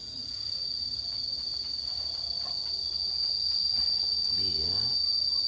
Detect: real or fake real